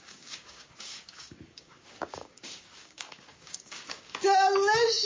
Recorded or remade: remade